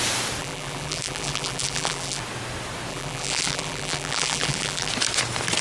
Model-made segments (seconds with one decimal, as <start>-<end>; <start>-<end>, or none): 0.4-2.2; 2.9-4.9